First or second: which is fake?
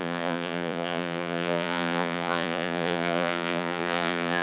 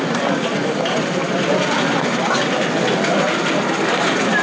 first